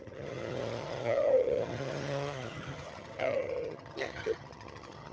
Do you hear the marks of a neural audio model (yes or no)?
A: yes